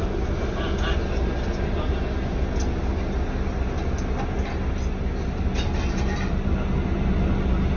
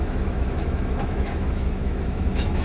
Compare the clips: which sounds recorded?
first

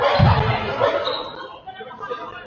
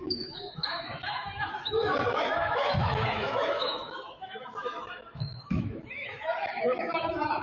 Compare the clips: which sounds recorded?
first